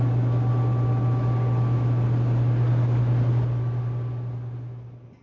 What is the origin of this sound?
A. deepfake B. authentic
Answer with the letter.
B